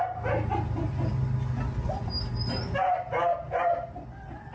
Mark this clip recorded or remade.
recorded